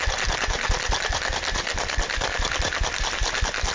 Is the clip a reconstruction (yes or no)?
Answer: no